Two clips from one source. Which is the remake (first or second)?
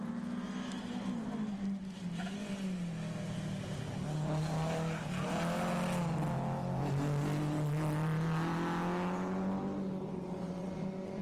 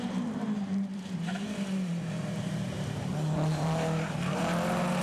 second